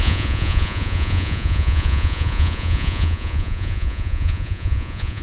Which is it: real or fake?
fake